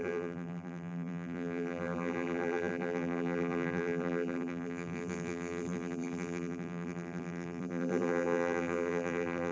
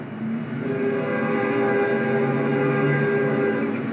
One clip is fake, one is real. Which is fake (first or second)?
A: first